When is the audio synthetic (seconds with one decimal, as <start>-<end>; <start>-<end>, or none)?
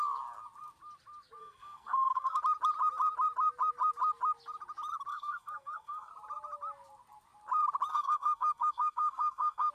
1.4-2.4; 5.1-6.1; 7.9-9.7